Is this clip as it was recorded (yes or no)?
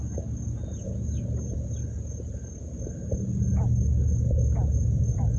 yes